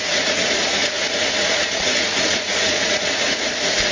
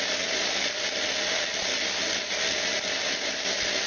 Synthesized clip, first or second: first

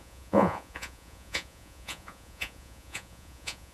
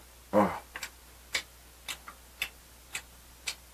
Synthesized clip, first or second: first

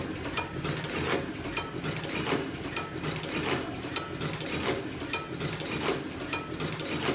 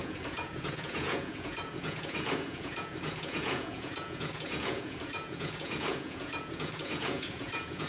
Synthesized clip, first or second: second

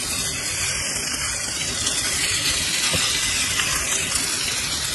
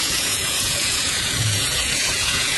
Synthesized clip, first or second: second